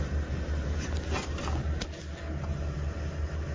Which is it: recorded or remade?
recorded